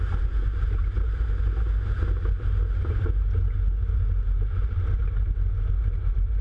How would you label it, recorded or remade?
recorded